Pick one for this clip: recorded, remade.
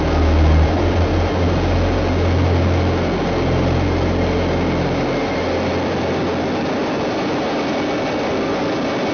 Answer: recorded